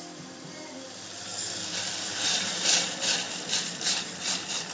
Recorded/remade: remade